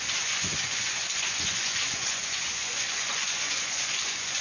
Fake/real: fake